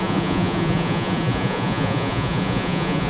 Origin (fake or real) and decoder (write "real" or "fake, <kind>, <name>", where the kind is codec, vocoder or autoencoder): fake, vocoder, Vocos